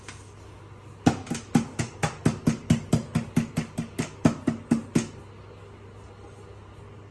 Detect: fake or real real